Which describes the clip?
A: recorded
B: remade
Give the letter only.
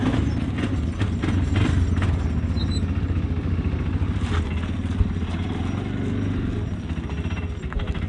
A